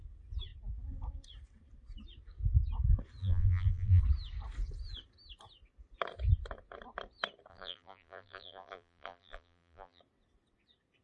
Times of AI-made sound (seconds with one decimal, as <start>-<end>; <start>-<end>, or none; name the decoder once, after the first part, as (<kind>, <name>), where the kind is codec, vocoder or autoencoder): 3.2-4.0 (vocoder, BigVGAN v2); 7.5-10.0